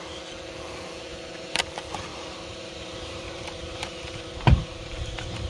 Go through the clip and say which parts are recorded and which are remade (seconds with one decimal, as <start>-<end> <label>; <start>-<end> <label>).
0.0-1.1 recorded; 1.1-1.6 remade; 1.6-2.1 recorded; 2.1-5.5 remade